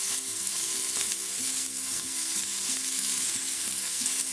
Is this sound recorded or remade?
remade